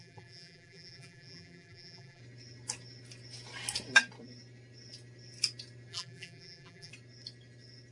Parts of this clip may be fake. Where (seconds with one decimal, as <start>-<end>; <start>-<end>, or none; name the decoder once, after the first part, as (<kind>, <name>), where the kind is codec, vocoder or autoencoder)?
0.0-2.2 (vocoder, BigVGAN v2); 5.9-6.9